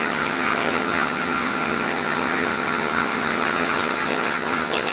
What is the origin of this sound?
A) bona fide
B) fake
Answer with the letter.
B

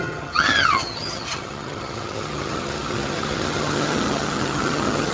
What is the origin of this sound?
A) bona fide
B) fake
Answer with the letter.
B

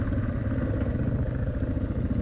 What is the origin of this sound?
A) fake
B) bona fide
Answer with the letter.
B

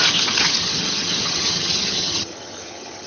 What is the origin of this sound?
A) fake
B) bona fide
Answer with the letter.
A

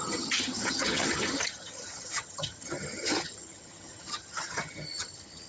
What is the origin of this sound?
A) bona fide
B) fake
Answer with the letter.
B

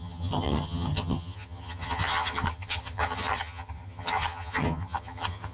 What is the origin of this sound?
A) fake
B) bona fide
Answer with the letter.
A